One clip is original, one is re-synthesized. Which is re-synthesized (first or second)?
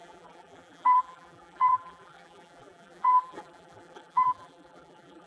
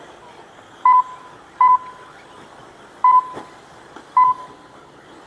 first